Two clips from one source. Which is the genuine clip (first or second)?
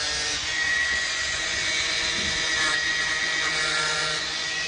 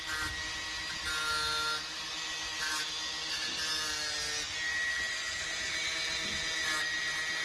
second